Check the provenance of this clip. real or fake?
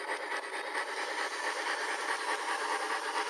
real